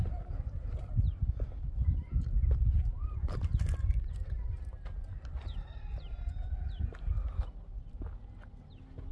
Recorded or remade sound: recorded